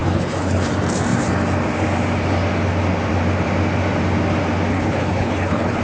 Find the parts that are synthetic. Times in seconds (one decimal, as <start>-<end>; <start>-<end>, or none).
0.0-0.7; 4.7-5.8